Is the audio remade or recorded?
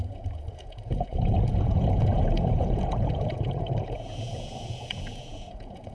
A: remade